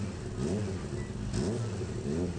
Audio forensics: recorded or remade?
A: recorded